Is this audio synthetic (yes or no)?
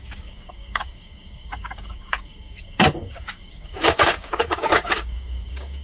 yes